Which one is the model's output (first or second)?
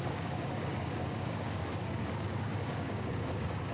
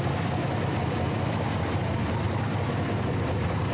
first